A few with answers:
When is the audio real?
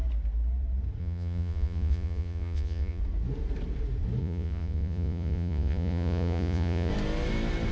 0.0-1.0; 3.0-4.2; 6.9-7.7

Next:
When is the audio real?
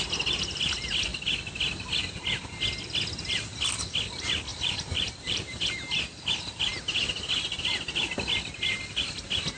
0.0-4.5; 5.7-9.6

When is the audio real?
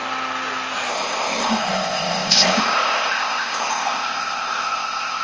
0.0-0.9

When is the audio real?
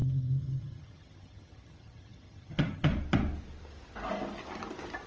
2.9-5.1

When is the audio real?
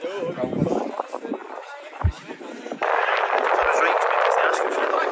0.0-5.1